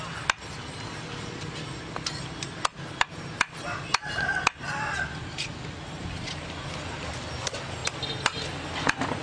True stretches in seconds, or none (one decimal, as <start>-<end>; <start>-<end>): 0.0-9.2